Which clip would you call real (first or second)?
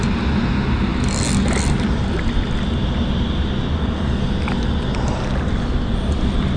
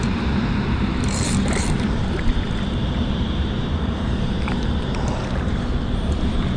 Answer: first